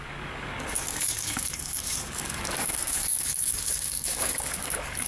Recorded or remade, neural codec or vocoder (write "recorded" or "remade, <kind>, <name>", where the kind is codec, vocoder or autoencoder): remade, codec, DAC